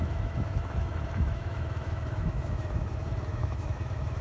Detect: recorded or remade remade